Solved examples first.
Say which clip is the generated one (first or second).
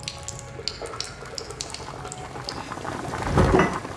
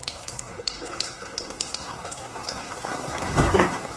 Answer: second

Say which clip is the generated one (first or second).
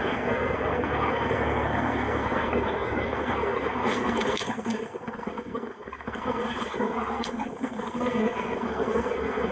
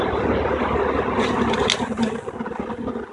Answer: first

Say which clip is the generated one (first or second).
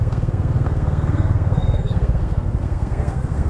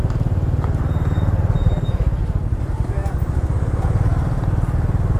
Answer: first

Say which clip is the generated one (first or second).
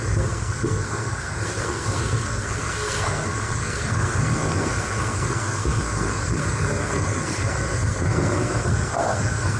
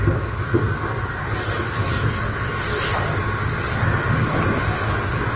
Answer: first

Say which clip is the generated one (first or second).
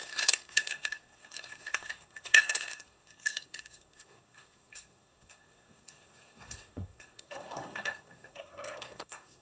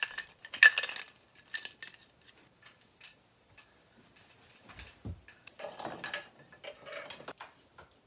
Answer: first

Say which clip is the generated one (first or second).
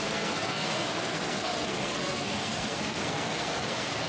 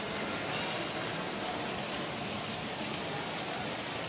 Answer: first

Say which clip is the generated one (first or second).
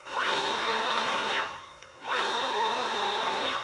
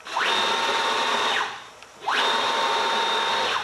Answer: first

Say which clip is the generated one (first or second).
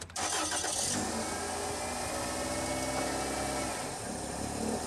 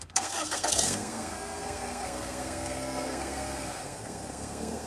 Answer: second